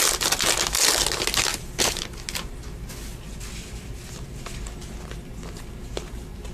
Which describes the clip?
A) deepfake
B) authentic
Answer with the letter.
B